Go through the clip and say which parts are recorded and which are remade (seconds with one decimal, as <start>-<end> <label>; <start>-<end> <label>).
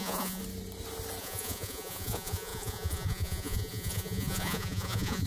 0.0-0.4 remade; 0.4-1.2 recorded; 1.2-5.3 remade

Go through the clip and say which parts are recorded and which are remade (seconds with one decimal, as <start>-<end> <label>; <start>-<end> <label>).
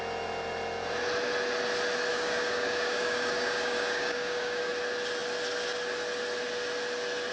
0.0-2.1 recorded; 2.1-4.7 remade; 4.7-7.3 recorded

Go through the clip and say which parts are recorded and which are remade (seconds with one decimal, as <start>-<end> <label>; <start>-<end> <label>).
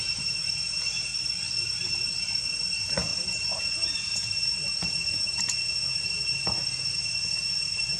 0.0-1.1 remade; 1.1-2.7 recorded; 2.7-8.0 remade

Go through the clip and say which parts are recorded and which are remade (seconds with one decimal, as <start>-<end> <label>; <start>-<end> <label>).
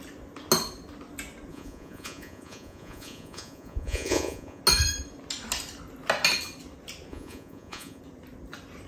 0.0-1.5 recorded; 1.5-4.6 remade; 4.6-7.1 recorded; 7.1-8.0 remade; 8.0-8.9 recorded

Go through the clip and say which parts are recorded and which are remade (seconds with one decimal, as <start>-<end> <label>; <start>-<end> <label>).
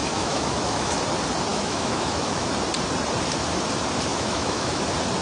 0.0-1.0 remade; 1.0-1.5 recorded; 1.5-2.5 remade; 2.5-4.1 recorded; 4.1-4.8 remade; 4.8-5.2 recorded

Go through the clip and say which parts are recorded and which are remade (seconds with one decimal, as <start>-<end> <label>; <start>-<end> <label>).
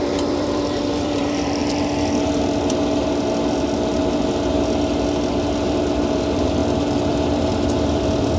0.0-1.6 remade; 1.6-5.3 recorded; 5.3-6.6 remade; 6.6-7.5 recorded; 7.5-8.4 remade